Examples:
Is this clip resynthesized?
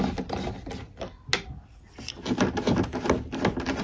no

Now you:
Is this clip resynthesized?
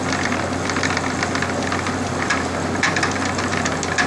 no